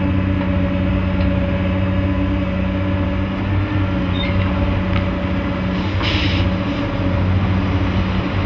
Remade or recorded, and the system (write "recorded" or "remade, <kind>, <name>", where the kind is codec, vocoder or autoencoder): recorded